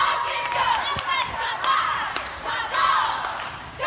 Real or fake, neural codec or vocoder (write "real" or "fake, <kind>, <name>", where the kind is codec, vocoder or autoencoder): fake, vocoder, BigVGAN v2